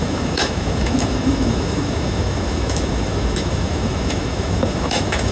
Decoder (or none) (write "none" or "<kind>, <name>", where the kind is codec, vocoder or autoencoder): autoencoder, DAC-VAE